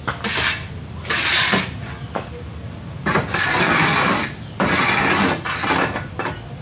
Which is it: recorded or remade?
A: recorded